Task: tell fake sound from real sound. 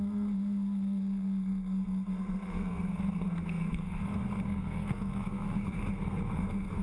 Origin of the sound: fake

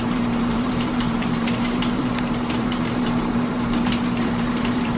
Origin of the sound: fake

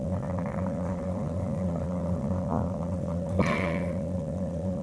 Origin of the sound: fake